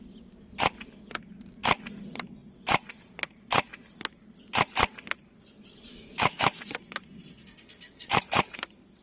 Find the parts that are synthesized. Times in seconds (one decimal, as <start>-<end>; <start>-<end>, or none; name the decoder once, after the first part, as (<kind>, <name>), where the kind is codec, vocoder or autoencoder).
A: 5.9-6.6 (autoencoder, DAC-VAE)